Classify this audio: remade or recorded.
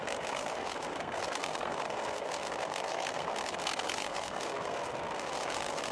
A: remade